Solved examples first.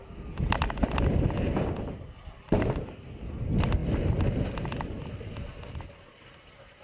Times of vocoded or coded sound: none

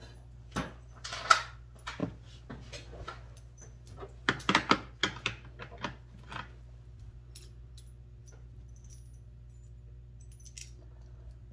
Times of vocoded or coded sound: none

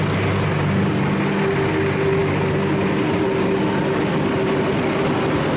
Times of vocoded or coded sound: none

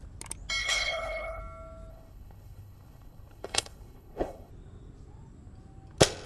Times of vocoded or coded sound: 0.6-1.4 (codec, HILCodec); 1.9-4.5

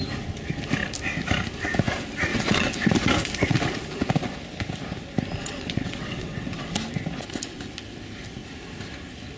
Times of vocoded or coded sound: 2.3-2.9 (vocoder, WaveNeXt); 5.4-6.7

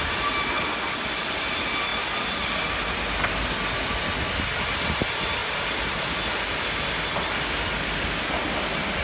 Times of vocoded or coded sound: none

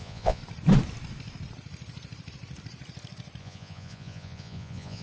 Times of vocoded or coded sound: 0.0-0.4 (vocoder, Vocos); 3.4-5.0